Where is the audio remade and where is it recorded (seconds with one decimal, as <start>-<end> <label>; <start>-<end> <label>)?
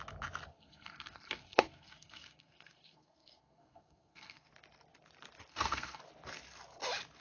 0.0-0.5 recorded; 0.5-4.5 remade; 4.5-5.5 recorded; 5.5-6.0 remade; 6.0-7.2 recorded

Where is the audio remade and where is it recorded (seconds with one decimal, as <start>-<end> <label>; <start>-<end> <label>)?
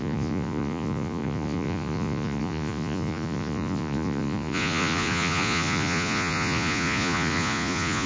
0.0-8.1 remade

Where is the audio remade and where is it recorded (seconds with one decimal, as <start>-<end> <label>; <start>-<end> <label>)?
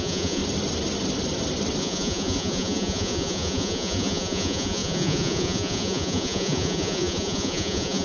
0.0-0.4 remade; 0.4-1.8 recorded; 1.8-8.0 remade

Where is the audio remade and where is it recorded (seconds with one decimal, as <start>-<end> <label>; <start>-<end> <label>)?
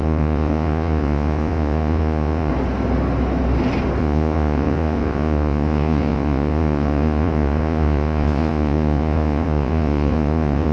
0.0-2.5 remade; 2.5-4.0 recorded; 4.0-10.7 remade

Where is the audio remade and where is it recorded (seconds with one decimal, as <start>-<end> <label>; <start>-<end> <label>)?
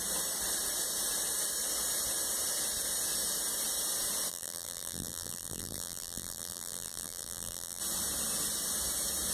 0.0-4.3 recorded; 4.3-7.8 remade; 7.8-9.3 recorded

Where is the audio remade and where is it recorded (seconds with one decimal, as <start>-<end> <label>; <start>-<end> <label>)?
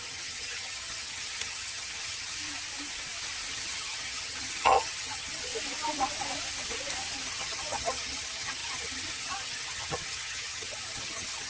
0.0-2.4 remade; 2.4-3.5 recorded; 3.5-5.5 remade; 5.5-7.3 recorded; 7.3-11.5 remade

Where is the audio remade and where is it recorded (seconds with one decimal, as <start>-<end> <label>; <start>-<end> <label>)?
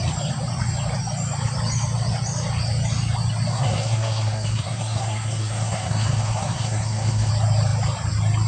0.0-3.5 recorded; 3.5-7.3 remade; 7.3-8.5 recorded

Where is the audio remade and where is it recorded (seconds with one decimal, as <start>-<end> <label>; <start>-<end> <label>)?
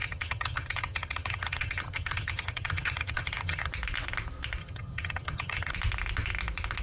0.0-3.7 remade; 3.7-4.6 recorded; 4.6-5.7 remade; 5.7-6.8 recorded